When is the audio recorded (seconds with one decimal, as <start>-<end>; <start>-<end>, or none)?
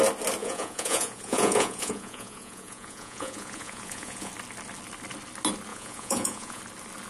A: 0.0-0.4; 4.3-5.7; 6.6-7.1